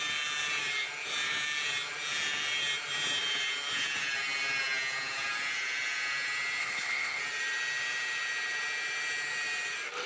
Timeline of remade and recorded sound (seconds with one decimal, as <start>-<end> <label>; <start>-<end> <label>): 0.0-6.6 recorded; 6.6-7.2 remade; 7.2-10.1 recorded

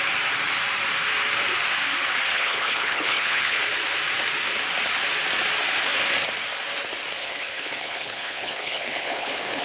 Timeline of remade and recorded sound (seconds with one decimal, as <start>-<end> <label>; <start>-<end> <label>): 0.0-2.3 recorded; 2.3-3.6 remade; 3.6-7.2 recorded; 7.2-9.6 remade